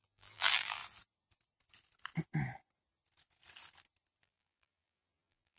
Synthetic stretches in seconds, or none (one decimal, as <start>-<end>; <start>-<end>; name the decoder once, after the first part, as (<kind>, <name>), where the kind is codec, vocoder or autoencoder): 0.0-0.8 (vocoder, BigVGAN v2); 4.2-5.6

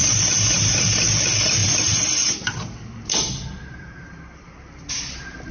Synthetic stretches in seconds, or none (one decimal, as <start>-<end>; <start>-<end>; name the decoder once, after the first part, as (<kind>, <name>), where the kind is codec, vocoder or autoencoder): none

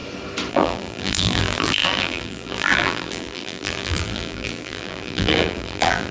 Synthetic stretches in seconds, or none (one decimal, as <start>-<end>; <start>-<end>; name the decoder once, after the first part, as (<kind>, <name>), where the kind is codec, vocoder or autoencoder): 0.5-6.1 (vocoder, BigVGAN v2)

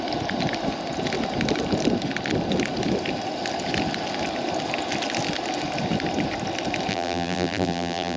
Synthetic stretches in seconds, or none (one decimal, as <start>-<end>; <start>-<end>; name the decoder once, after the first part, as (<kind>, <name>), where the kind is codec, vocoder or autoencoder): 6.9-8.2 (vocoder, BigVGAN v2)